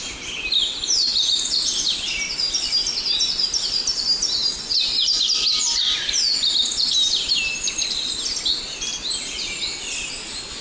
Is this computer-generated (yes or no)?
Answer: no